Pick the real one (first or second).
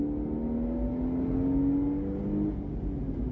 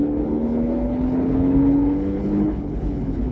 first